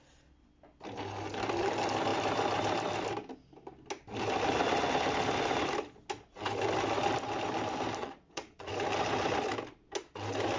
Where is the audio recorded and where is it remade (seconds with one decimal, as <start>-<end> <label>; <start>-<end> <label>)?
0.0-8.0 recorded; 8.0-8.7 remade; 8.7-10.6 recorded